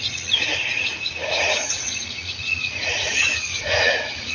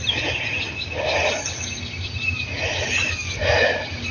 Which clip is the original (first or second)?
second